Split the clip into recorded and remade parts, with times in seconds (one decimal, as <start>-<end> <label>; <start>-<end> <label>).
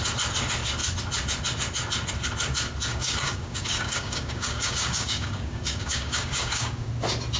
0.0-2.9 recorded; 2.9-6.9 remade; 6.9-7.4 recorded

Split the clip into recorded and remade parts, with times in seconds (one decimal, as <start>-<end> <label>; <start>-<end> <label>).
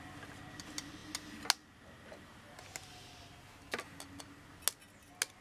0.0-5.4 recorded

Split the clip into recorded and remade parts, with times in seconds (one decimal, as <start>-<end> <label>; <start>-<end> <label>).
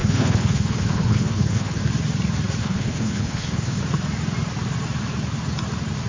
0.0-1.8 remade; 1.8-2.6 recorded; 2.6-3.8 remade; 3.8-6.1 recorded